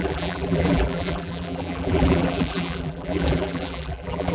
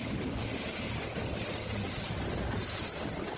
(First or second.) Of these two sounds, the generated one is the first